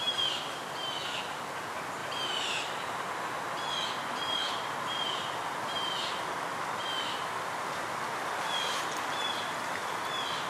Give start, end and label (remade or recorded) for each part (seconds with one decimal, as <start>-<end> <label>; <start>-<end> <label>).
0.0-2.0 recorded; 2.0-2.9 remade; 2.9-10.5 recorded